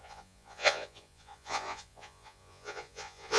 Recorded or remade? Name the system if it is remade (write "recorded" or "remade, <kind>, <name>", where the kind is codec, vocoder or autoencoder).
remade, vocoder, Vocos